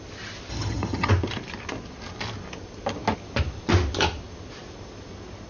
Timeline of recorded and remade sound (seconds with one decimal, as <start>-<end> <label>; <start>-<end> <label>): 0.0-0.5 recorded; 0.5-1.1 remade; 1.1-5.5 recorded